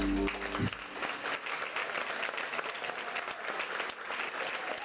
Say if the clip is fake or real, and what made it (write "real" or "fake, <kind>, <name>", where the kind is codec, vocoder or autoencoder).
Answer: real